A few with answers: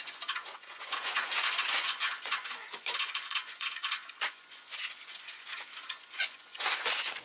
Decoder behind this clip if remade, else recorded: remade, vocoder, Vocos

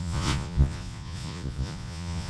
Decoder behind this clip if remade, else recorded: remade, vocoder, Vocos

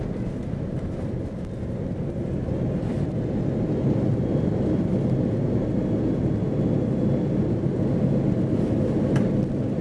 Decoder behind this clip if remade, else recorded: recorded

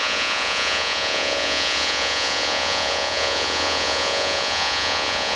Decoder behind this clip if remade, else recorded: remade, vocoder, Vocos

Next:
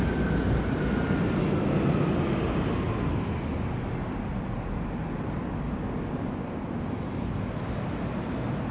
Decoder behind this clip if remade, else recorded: recorded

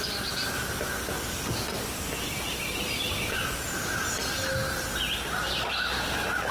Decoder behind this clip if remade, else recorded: recorded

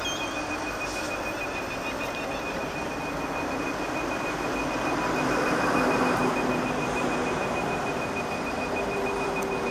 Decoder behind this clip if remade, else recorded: recorded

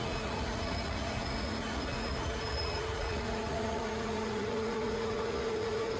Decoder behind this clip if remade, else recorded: remade, vocoder, Vocos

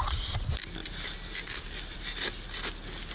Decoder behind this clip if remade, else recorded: recorded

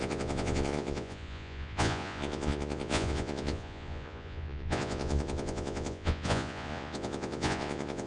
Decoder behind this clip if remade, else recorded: remade, vocoder, Vocos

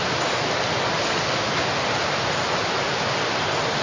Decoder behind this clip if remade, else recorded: recorded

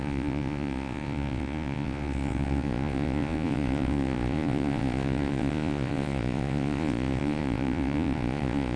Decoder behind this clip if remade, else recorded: remade, vocoder, Vocos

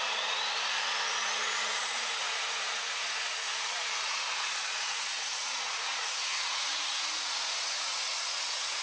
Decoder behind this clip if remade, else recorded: remade, vocoder, Vocos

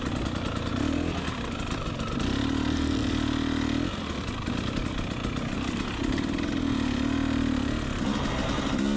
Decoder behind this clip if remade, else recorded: recorded